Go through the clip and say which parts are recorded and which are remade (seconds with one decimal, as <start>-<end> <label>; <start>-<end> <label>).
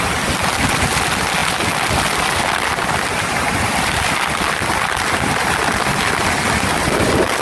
0.0-7.4 recorded